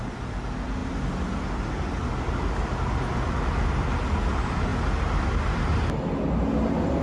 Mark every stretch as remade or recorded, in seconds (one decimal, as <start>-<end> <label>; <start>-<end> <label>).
0.0-7.0 recorded